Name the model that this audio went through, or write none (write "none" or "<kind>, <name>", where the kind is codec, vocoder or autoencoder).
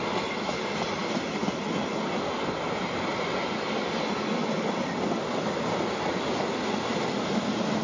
none